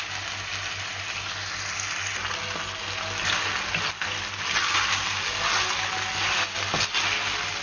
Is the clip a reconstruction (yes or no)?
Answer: no